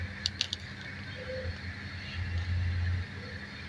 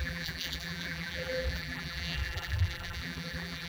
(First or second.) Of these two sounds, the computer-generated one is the second